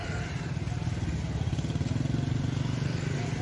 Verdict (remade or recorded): recorded